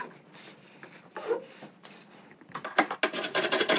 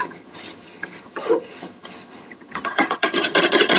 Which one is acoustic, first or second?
first